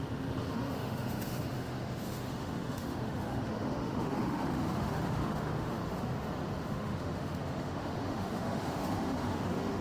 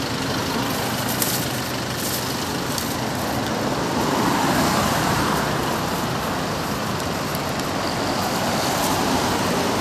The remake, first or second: first